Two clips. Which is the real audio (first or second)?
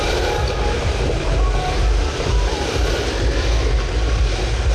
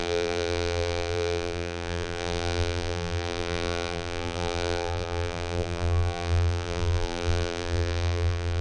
first